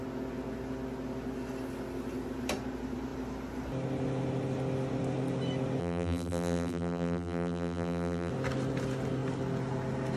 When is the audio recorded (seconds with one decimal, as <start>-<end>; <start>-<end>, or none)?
0.0-5.8; 8.3-10.2